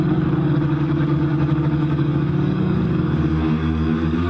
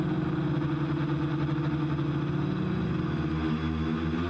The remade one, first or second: first